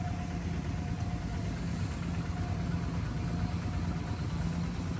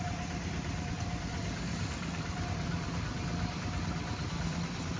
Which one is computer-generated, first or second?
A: second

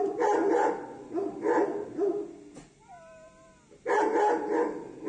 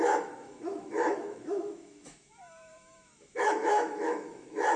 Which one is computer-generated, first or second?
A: second